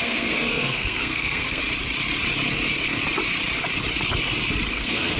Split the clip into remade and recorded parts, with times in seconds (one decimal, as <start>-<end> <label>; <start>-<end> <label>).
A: 0.0-1.6 remade; 1.6-4.7 recorded; 4.7-5.2 remade